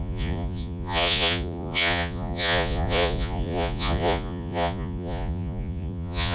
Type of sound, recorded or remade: remade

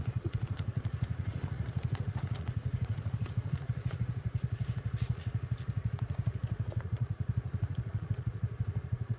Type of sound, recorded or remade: remade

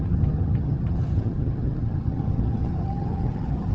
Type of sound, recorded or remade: remade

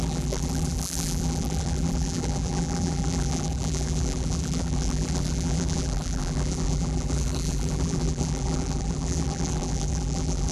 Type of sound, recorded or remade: remade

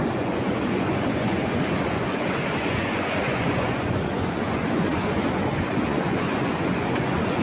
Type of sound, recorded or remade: remade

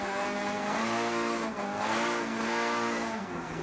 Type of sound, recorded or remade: remade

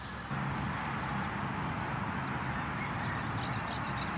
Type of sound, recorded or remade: recorded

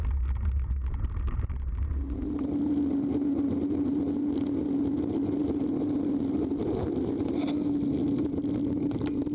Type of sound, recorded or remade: recorded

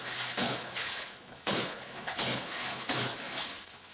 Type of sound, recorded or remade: remade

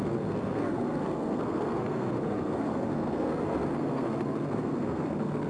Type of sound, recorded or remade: remade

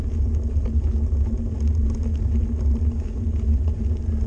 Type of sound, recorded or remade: recorded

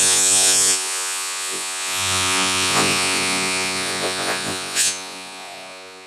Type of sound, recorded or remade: remade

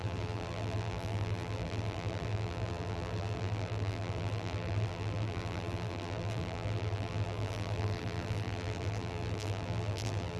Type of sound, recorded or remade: remade